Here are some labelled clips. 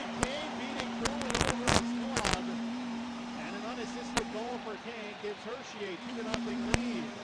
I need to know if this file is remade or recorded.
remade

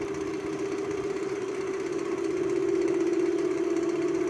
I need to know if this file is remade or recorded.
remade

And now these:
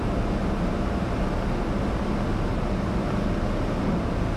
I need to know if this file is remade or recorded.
recorded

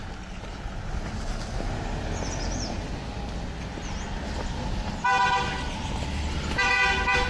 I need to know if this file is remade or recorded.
recorded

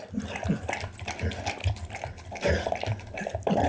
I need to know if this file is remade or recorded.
recorded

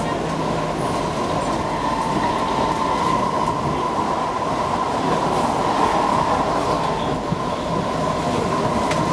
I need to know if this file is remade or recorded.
recorded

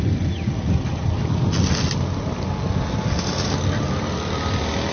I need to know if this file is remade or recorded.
recorded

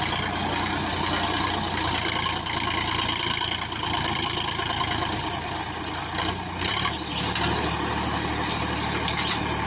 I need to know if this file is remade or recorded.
recorded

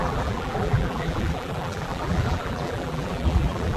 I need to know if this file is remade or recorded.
remade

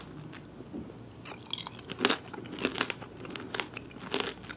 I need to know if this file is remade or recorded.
recorded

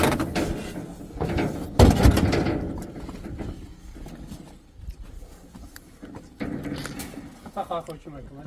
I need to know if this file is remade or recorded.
recorded